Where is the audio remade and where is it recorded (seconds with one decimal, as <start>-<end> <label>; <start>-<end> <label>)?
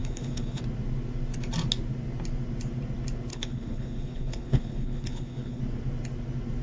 0.0-0.6 remade; 0.6-3.3 recorded; 3.3-5.6 remade; 5.6-6.6 recorded